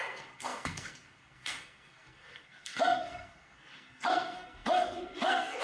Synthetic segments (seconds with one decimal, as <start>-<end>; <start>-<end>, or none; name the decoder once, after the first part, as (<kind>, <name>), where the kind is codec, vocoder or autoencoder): 0.0-5.6 (codec, SNAC)